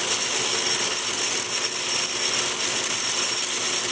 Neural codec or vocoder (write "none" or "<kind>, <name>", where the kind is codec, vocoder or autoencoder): none